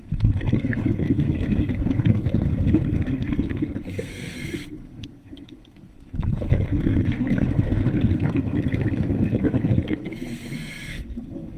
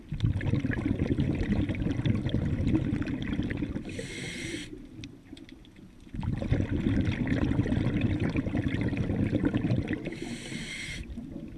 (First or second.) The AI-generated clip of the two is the first